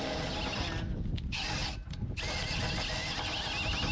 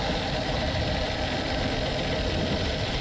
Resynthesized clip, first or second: second